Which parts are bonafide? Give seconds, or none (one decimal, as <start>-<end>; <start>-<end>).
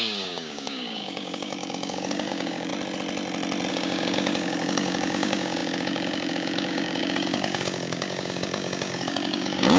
2.7-3.7